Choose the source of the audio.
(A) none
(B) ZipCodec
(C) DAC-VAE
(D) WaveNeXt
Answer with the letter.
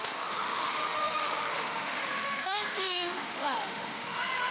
C